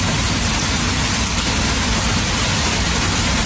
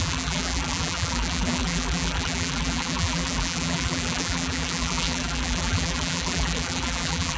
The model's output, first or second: second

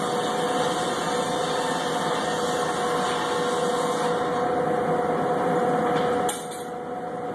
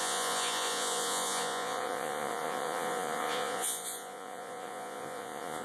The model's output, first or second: second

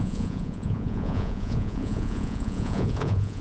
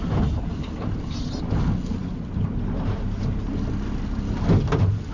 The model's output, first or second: first